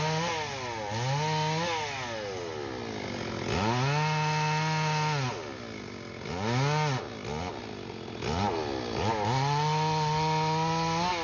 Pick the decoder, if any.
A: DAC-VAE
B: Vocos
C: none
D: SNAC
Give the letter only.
C